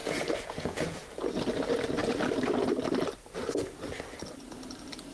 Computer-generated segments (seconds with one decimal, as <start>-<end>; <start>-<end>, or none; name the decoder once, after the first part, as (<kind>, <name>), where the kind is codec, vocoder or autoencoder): 0.0-1.4 (vocoder, Vocos)